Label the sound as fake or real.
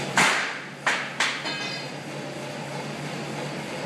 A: real